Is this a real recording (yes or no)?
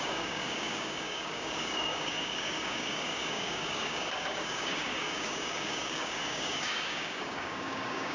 no